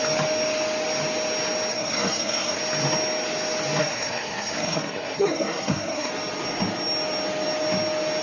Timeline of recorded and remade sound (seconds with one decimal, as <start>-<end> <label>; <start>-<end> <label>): 0.0-1.7 recorded; 1.7-2.6 remade; 2.6-3.8 recorded; 3.8-6.1 remade; 6.1-8.2 recorded